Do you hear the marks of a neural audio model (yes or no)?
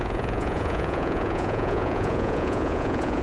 yes